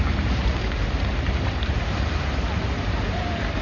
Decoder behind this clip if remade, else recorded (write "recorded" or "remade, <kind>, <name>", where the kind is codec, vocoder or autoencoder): remade, vocoder, BigVGAN v2